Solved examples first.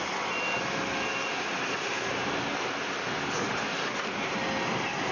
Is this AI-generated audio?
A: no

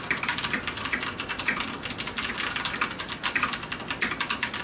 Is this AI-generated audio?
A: no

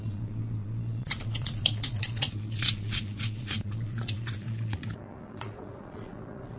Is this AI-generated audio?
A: yes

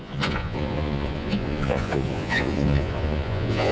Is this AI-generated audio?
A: yes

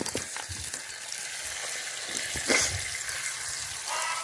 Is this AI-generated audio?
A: no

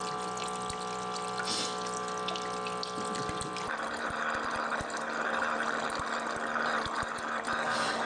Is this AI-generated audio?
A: no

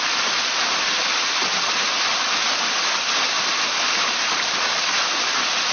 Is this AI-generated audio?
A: no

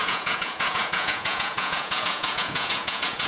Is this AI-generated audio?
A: yes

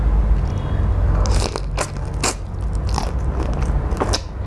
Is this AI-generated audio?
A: no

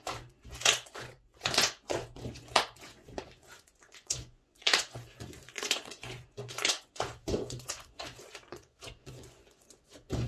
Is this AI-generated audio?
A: yes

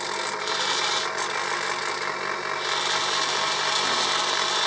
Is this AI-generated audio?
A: no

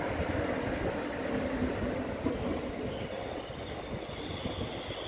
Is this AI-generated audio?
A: no